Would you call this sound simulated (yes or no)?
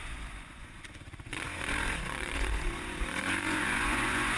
yes